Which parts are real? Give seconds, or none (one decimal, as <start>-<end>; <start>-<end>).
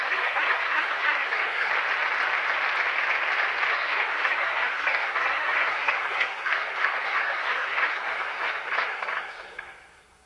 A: 1.7-3.7